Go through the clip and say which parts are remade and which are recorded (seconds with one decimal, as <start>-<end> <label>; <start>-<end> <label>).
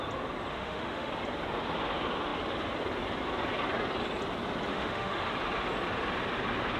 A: 0.0-0.5 recorded; 0.5-1.1 remade; 1.1-4.7 recorded; 4.7-5.3 remade; 5.3-6.8 recorded